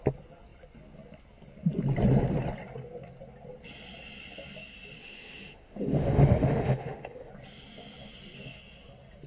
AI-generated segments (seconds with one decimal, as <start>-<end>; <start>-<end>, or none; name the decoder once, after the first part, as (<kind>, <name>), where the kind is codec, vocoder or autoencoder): 5.0-7.3 (autoencoder, DAC-VAE)